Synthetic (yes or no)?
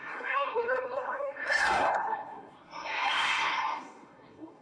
yes